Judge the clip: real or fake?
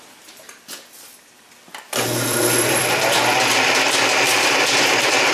fake